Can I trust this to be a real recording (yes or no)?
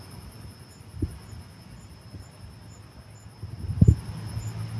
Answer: yes